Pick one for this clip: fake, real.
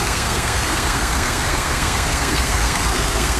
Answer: fake